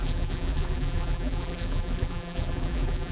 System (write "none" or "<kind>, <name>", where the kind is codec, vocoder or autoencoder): vocoder, BigVGAN v2